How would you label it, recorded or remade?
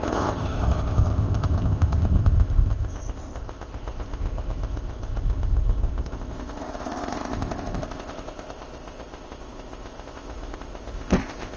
remade